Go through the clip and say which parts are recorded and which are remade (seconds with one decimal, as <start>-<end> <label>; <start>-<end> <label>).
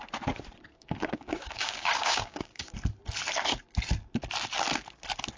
0.0-0.7 recorded; 0.7-2.7 remade; 2.7-5.4 recorded